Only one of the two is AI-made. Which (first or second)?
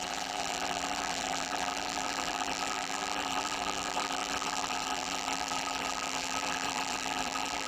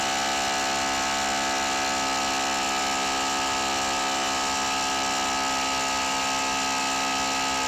first